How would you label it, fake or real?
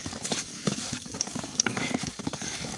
fake